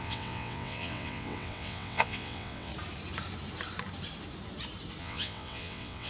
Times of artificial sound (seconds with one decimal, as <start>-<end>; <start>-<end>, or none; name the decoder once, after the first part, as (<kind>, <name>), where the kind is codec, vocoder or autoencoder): 0.0-2.7 (vocoder, WaveNeXt); 5.0-6.1